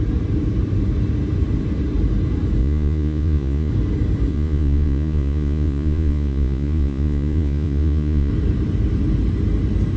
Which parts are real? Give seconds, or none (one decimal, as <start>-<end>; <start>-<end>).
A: 0.0-2.6; 3.7-4.3; 8.3-10.0

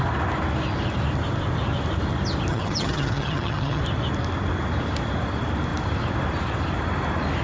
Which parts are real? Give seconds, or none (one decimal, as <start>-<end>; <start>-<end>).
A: 0.0-2.5; 3.8-7.4

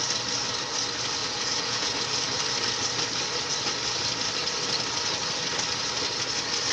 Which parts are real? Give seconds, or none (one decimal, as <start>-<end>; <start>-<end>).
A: 0.0-1.2; 1.9-6.7

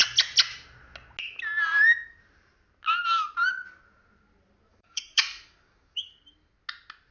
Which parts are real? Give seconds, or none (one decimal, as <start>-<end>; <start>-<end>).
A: 0.0-4.7; 6.1-7.1

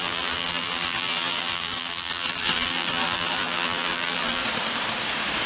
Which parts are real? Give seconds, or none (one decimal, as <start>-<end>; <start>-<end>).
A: 4.4-5.5